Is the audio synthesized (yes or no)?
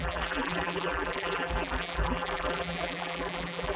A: yes